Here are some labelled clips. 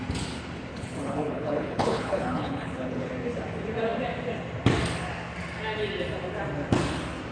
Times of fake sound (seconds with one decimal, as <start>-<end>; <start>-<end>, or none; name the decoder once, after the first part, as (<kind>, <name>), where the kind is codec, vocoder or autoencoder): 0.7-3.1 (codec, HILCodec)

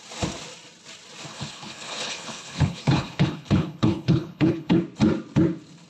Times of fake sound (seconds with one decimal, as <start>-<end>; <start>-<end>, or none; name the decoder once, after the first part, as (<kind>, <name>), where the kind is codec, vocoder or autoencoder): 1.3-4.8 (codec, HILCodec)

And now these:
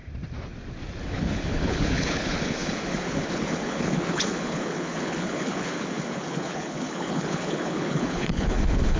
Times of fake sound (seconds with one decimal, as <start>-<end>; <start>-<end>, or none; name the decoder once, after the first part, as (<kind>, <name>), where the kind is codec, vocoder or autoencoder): 1.0-9.0 (codec, HILCodec)

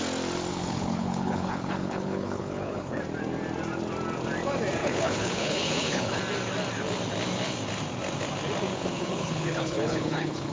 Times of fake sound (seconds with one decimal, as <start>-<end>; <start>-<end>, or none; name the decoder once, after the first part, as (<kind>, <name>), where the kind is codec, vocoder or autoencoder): 0.5-3.0 (codec, HILCodec); 4.8-6.2; 8.7-10.5

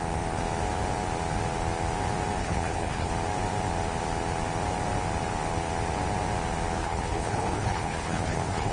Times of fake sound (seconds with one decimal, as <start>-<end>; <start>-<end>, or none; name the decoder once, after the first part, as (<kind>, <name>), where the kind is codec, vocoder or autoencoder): 2.4-3.1 (codec, HILCodec); 6.8-8.7

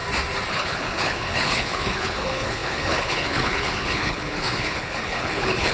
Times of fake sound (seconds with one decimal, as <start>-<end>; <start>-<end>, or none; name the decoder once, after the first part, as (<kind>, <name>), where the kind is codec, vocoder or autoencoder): 0.5-5.7 (codec, HILCodec)